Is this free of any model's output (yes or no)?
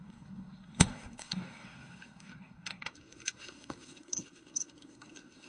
no